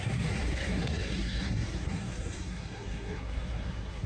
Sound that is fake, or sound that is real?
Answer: fake